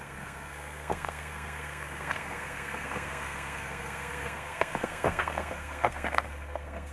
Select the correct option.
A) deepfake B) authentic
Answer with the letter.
A